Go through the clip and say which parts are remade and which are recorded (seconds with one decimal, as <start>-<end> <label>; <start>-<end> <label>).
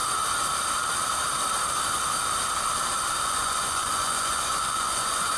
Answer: 0.0-3.2 recorded; 3.2-5.4 remade